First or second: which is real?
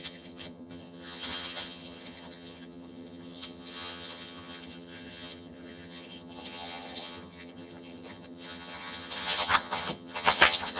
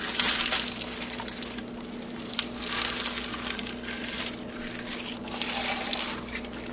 second